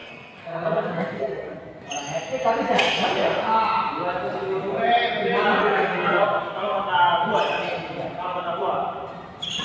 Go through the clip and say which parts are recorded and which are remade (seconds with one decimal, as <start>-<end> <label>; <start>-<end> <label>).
0.0-1.6 remade; 1.6-5.6 recorded; 5.6-6.4 remade; 6.4-9.6 recorded